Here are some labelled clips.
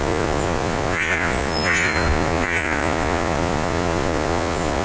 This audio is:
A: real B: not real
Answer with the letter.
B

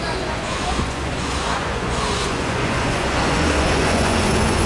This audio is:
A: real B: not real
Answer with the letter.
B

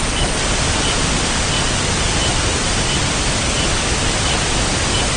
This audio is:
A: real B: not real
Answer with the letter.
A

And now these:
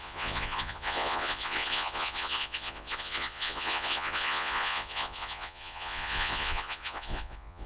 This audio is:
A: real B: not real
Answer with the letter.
B